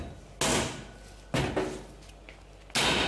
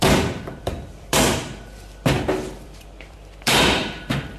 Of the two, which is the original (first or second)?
first